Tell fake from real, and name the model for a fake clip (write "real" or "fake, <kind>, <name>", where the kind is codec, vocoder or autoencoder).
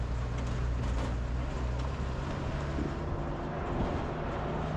real